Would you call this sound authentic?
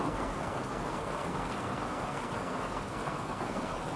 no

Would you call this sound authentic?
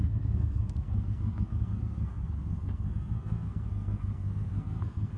no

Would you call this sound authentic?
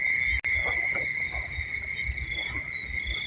yes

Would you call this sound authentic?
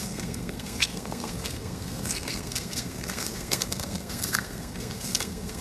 no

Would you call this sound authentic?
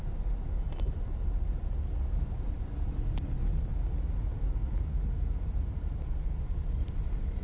yes